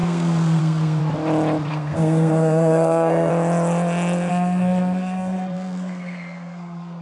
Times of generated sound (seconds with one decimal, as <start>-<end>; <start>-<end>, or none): 0.0-1.0; 1.7-3.3; 4.3-7.0